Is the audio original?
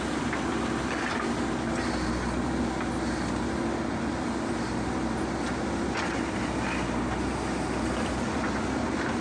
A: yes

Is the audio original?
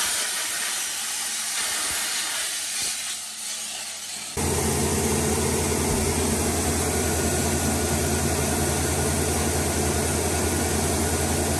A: yes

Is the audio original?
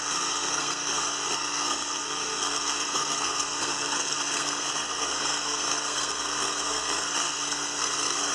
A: no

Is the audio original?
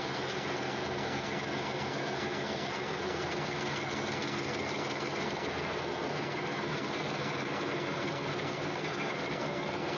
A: no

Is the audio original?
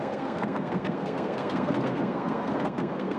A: no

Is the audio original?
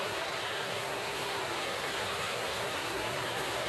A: no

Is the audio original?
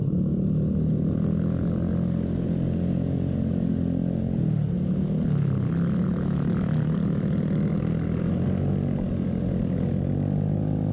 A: yes